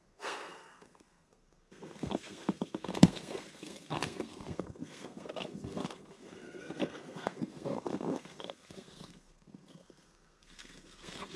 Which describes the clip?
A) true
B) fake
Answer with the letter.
B